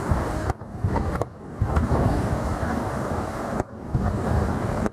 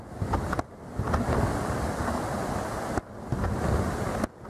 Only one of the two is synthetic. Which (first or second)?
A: first